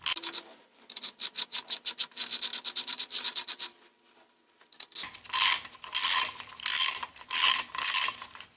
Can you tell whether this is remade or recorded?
recorded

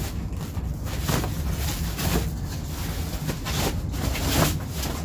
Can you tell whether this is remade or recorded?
recorded